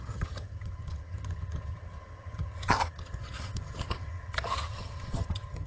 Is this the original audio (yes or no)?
no